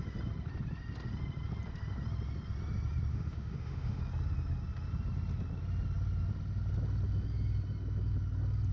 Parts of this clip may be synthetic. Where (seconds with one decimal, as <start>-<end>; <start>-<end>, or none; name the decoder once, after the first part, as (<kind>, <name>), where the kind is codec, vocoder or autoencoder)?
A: 3.1-4.0 (autoencoder, DAC-VAE)